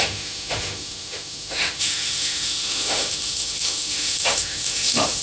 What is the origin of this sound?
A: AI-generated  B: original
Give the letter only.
A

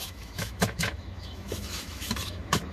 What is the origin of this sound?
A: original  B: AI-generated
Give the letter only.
B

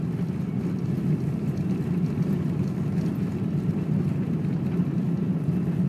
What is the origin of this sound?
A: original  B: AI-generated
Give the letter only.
A